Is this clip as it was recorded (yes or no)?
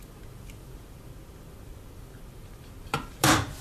yes